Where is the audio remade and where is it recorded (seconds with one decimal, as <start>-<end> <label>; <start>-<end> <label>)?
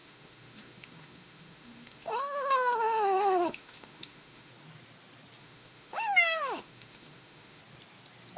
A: 0.0-4.5 remade; 4.5-5.4 recorded; 5.4-7.6 remade; 7.6-8.4 recorded